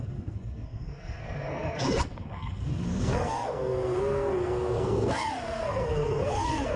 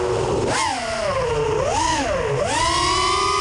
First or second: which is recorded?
second